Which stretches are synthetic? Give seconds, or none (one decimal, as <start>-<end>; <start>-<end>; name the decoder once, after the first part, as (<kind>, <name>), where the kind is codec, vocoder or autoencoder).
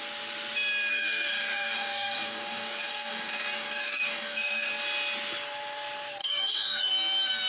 0.9-4.7 (codec, DAC); 6.2-6.9